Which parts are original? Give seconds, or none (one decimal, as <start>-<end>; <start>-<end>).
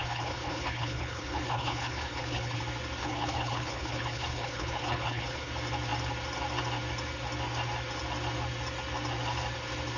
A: 2.6-3.0; 5.5-10.0